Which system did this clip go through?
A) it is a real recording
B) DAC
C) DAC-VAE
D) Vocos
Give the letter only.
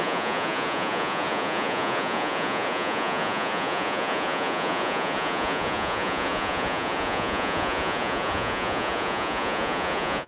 D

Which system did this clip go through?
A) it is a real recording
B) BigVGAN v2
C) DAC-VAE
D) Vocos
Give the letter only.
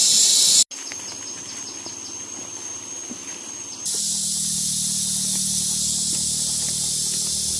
A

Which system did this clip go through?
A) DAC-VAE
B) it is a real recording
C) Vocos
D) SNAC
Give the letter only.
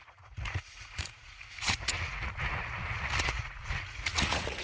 C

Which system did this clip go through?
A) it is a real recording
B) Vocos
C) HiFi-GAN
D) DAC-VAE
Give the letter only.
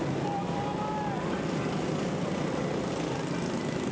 A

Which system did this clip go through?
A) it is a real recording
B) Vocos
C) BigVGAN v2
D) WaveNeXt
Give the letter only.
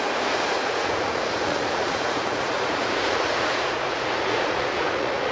B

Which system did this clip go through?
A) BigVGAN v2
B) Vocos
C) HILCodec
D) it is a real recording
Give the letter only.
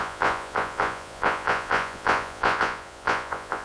B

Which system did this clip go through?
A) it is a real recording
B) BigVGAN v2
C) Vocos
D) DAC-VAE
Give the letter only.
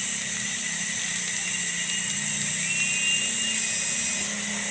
A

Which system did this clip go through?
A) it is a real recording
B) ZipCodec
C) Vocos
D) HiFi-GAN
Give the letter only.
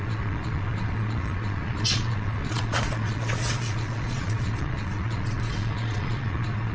C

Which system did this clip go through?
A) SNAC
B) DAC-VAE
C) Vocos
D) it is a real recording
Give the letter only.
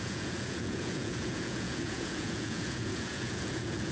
C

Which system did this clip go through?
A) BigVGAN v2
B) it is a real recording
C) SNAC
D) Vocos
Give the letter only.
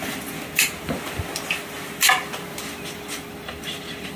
B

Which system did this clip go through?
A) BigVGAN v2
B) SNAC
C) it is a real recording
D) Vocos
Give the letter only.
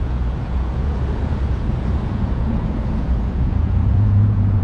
D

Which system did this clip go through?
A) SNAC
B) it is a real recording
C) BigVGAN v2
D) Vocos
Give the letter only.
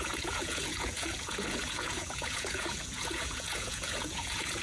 D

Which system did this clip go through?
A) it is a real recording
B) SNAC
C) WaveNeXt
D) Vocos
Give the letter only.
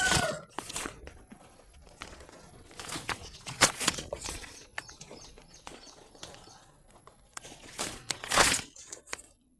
D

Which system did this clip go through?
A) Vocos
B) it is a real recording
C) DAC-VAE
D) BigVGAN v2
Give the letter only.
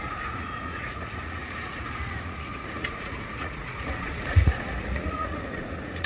A